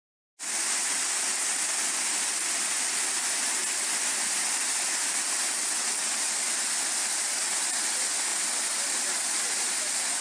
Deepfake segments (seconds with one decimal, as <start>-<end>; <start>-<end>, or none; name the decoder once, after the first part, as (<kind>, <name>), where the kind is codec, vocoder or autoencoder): 5.5-6.2 (vocoder, WaveNeXt)